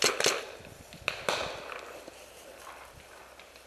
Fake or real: real